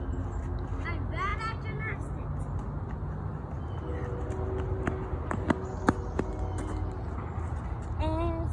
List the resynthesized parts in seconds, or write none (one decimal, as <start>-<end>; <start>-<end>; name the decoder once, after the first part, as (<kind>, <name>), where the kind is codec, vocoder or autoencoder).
none